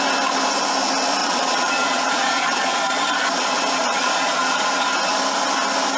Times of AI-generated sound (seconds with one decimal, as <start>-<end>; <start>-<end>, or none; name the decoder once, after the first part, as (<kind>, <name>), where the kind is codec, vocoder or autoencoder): 1.2-4.8 (vocoder, Vocos)